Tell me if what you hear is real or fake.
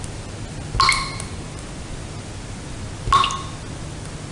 real